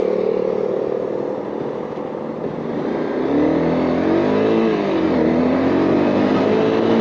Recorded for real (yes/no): yes